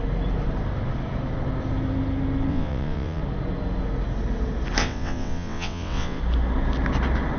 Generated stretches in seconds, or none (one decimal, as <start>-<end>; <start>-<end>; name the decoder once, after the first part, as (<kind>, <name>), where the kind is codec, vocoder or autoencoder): 2.5-3.2 (vocoder, WaveNeXt); 4.8-6.2